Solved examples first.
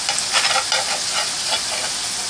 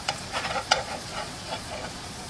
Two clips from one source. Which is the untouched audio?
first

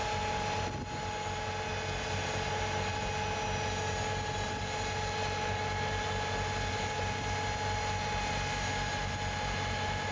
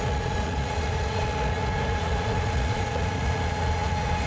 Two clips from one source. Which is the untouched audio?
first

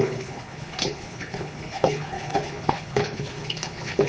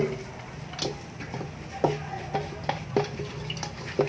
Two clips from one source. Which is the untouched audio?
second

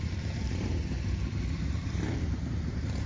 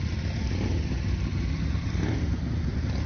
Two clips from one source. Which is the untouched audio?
second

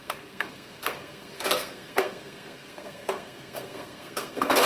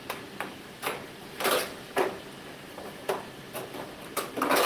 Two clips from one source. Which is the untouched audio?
second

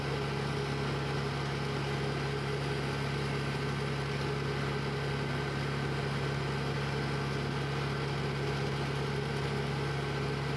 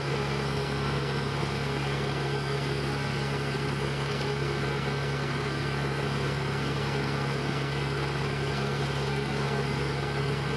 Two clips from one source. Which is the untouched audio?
first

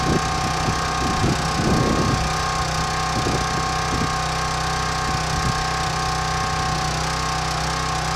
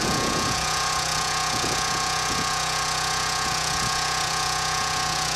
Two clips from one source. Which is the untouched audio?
first